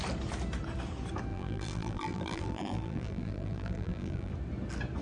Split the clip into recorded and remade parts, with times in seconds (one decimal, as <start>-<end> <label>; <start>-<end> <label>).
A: 0.0-1.3 recorded; 1.3-4.3 remade; 4.3-5.0 recorded

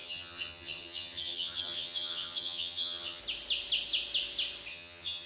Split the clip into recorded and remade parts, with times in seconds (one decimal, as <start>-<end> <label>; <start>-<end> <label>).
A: 0.0-3.2 remade; 3.2-4.7 recorded; 4.7-5.3 remade

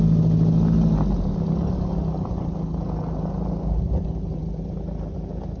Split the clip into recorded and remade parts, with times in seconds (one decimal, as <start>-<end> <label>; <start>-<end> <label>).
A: 0.0-5.6 recorded

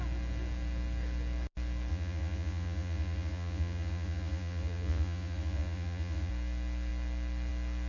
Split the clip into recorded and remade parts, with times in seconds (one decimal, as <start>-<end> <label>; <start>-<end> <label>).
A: 0.0-1.9 recorded; 1.9-6.3 remade; 6.3-7.9 recorded